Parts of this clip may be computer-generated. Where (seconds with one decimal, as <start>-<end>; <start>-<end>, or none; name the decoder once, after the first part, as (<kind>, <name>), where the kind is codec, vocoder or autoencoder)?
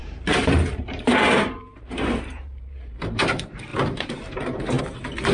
0.0-3.2 (vocoder, BigVGAN v2); 3.7-4.8